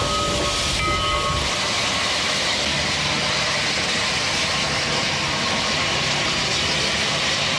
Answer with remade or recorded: recorded